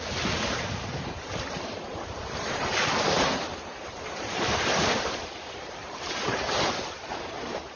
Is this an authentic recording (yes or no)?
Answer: no